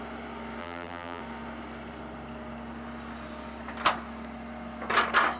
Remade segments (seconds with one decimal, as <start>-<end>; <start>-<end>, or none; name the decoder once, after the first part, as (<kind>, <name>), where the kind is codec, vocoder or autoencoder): 0.6-1.2 (vocoder, BigVGAN v2)